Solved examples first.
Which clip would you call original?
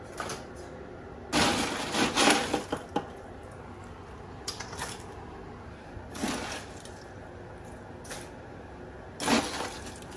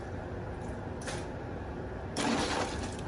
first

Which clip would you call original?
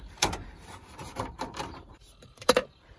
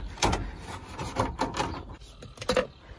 second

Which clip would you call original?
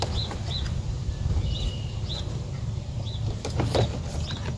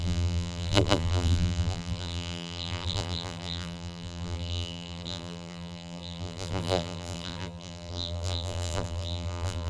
first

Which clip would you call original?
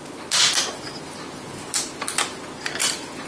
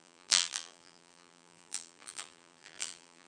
first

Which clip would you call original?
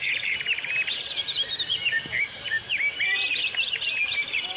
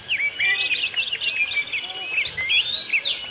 second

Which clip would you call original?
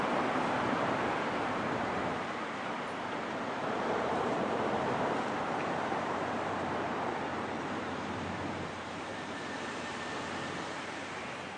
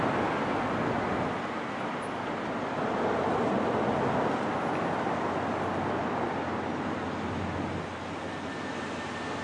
second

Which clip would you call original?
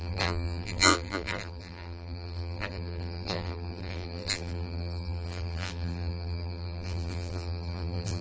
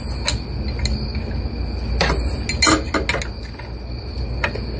second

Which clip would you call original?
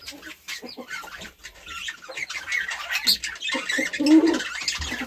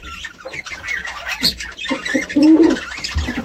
first